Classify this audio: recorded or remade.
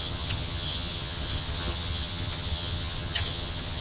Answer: remade